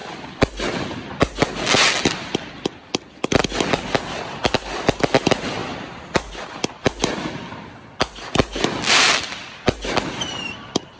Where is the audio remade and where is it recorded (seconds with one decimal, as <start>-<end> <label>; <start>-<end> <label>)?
0.0-11.0 recorded